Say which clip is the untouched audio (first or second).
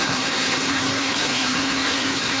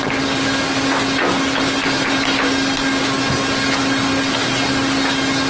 second